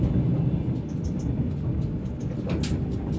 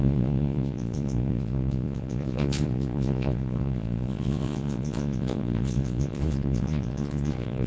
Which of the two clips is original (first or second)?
first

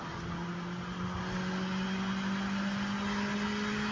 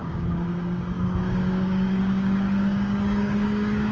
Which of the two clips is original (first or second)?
first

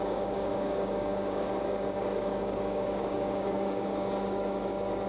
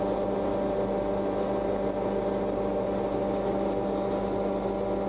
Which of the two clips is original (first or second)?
second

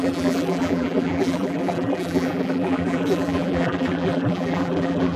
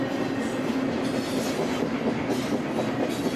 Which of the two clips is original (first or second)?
second